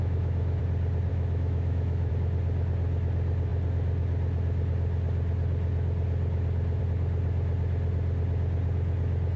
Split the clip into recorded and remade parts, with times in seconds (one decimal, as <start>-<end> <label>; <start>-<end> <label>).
0.0-0.6 remade; 0.6-1.1 recorded; 1.1-2.1 remade; 2.1-9.4 recorded